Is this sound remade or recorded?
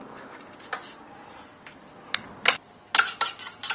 recorded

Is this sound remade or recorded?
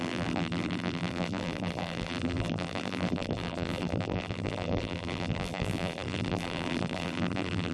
remade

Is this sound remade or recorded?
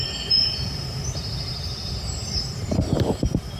remade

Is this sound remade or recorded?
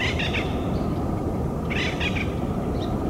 remade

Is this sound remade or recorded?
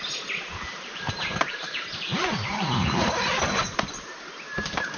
remade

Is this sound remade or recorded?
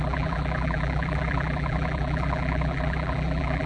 remade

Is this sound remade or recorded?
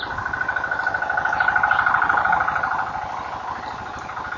recorded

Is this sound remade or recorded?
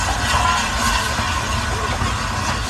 recorded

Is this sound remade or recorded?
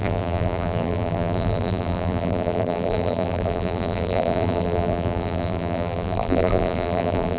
remade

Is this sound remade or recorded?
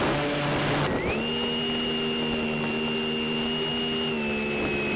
recorded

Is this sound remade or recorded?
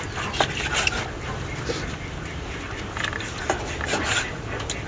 recorded